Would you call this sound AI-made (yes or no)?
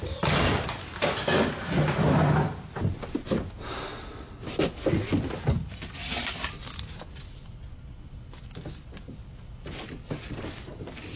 no